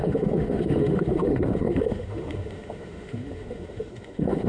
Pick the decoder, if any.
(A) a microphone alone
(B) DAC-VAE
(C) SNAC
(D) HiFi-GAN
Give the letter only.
B